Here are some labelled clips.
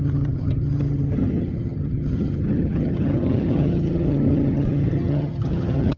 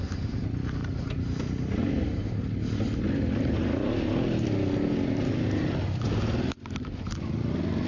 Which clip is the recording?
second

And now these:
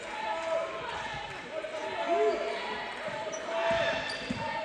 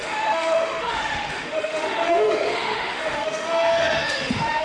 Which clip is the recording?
first